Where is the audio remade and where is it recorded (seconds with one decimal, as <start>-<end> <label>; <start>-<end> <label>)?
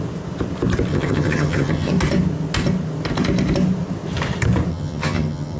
0.0-0.9 recorded; 0.9-1.9 remade; 1.9-4.7 recorded; 4.7-5.6 remade